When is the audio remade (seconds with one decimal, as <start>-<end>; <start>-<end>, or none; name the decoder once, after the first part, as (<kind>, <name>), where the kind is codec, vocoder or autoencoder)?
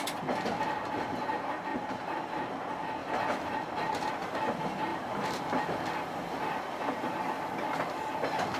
1.7-2.2 (vocoder, BigVGAN v2); 3.0-4.1; 4.9-5.4